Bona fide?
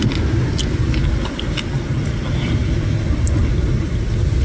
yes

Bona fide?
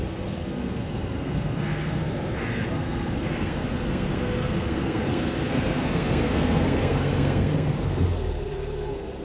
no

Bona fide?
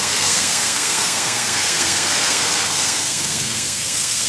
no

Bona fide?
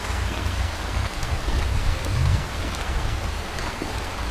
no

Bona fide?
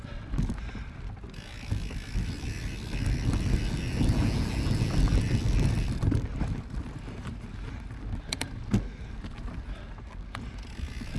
yes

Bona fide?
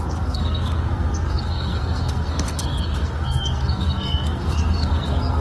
no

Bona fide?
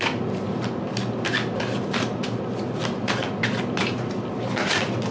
yes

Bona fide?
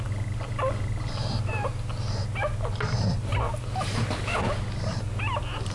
yes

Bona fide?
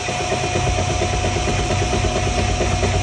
yes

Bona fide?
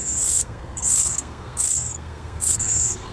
no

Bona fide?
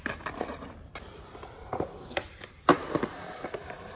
yes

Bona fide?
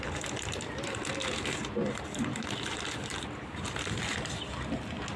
yes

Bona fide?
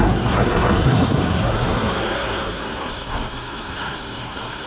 no